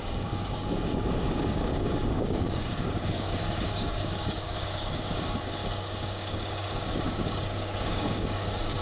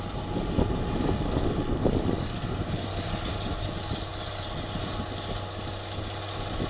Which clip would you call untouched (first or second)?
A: second